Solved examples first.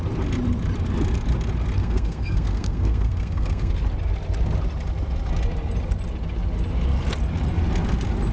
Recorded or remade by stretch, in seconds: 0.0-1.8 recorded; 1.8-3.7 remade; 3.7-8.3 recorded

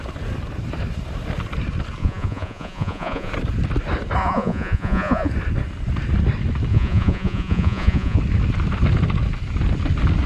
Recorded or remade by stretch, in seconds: 0.0-2.0 recorded; 2.0-3.3 remade; 3.3-4.2 recorded; 4.2-5.3 remade; 5.3-6.7 recorded; 6.7-8.2 remade; 8.2-10.3 recorded

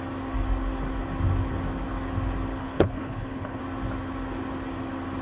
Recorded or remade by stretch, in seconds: 0.0-2.6 recorded; 2.6-3.6 remade; 3.6-5.2 recorded